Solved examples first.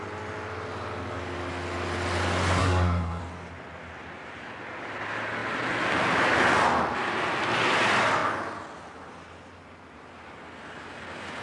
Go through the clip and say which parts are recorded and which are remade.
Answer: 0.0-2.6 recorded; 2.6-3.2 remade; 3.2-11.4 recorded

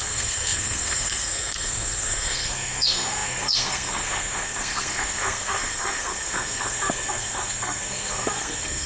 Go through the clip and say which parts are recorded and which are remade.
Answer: 0.0-8.9 remade